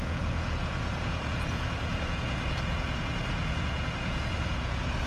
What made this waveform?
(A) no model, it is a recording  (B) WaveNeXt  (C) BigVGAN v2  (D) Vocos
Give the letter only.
D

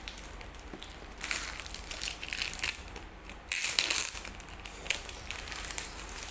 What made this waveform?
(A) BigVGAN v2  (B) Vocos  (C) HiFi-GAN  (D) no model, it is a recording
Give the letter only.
A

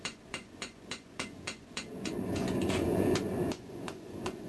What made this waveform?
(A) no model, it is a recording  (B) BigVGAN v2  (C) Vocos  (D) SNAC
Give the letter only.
C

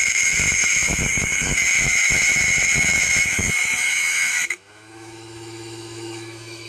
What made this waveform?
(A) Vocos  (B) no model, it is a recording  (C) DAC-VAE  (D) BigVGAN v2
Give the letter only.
C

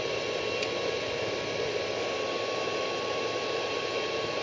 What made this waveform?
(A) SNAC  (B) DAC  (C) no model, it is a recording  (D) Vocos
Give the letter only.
C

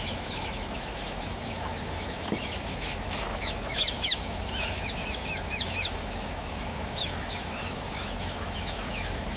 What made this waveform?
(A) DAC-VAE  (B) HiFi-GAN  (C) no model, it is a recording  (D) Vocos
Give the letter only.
A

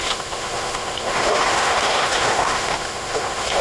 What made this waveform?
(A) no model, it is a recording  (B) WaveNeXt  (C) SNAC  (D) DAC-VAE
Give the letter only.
D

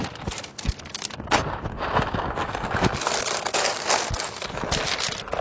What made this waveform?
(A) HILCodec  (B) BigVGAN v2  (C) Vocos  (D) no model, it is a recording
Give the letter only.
D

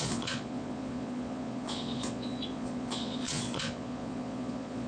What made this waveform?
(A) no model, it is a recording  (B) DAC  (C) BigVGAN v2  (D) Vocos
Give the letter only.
D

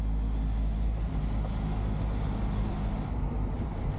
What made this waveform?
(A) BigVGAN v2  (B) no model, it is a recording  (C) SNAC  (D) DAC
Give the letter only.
B